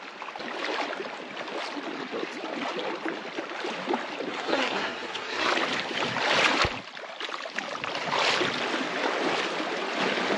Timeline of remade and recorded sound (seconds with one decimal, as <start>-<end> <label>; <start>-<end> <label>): 0.0-4.3 recorded; 4.3-5.5 remade; 5.5-10.4 recorded

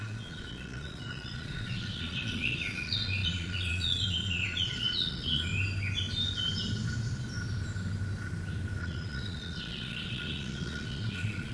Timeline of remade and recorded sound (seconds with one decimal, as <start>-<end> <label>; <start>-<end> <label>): 0.0-5.5 remade; 5.5-8.8 recorded; 8.8-11.5 remade

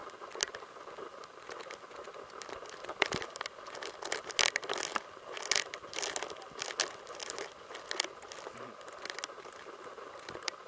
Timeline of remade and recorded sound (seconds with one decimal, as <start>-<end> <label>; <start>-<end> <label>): 0.0-10.7 recorded

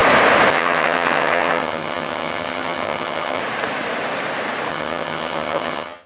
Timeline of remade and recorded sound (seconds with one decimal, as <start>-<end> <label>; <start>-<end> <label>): 0.0-0.5 recorded; 0.5-3.4 remade; 3.4-4.7 recorded; 4.7-6.1 remade

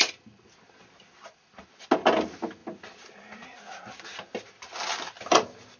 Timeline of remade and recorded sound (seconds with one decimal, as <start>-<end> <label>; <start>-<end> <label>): 0.0-5.8 recorded

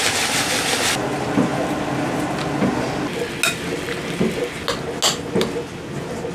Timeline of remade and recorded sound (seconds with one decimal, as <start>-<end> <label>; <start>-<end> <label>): 0.0-6.3 recorded

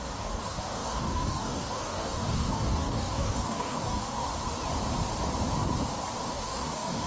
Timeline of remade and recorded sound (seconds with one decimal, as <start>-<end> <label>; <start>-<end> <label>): 0.0-4.3 remade; 4.3-6.3 recorded; 6.3-7.1 remade

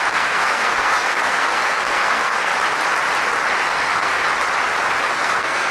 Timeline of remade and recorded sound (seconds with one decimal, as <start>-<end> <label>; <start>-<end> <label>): 0.0-2.5 remade; 2.5-3.7 recorded; 3.7-4.2 remade; 4.2-5.1 recorded; 5.1-5.7 remade